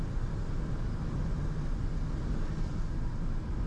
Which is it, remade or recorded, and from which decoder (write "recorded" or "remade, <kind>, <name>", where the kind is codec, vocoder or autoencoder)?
recorded